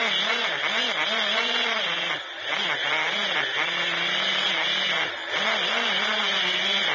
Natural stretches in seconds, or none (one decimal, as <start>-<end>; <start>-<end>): 0.0-6.9